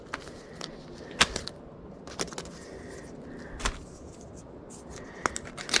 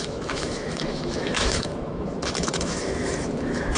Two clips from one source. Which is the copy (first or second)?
second